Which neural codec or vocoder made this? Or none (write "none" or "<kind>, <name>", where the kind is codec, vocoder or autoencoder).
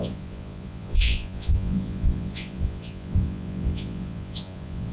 vocoder, Vocos